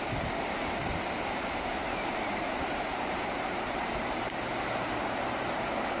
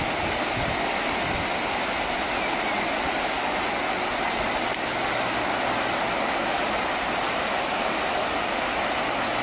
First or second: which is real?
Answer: second